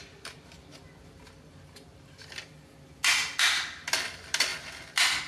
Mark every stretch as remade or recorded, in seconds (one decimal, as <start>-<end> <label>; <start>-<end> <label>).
0.0-5.3 recorded